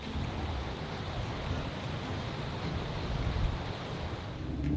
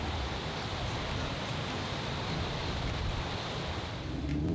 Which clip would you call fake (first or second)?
second